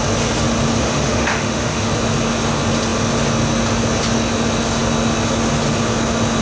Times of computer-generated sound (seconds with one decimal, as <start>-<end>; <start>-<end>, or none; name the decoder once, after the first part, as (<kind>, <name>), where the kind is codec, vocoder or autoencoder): 0.8-1.9 (autoencoder, DAC-VAE)